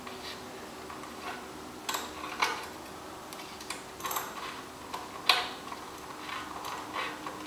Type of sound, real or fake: real